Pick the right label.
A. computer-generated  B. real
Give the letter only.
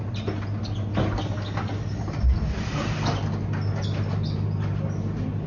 B